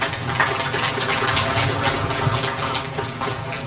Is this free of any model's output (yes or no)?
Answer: yes